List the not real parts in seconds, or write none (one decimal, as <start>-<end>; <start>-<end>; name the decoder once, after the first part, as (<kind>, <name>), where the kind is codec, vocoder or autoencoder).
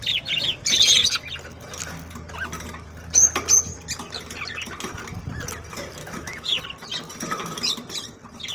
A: 6.0-6.6 (autoencoder, DAC-VAE)